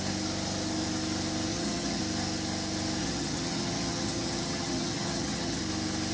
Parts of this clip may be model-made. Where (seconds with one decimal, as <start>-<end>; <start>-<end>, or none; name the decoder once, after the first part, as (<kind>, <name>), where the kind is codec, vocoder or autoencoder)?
1.5-2.0 (vocoder, HiFi-GAN); 3.0-5.6